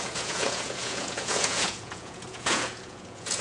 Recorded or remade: remade